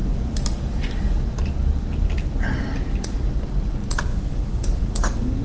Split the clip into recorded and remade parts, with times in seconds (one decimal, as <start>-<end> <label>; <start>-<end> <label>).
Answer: 0.0-4.1 recorded; 4.1-5.4 remade